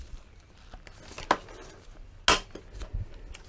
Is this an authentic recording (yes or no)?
yes